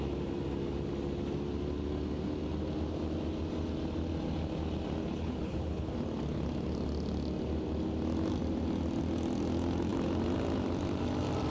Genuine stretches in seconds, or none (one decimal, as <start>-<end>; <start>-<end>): 0.0-5.0; 5.9-11.5